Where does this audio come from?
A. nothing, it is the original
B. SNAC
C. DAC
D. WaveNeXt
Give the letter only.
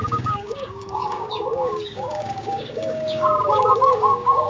C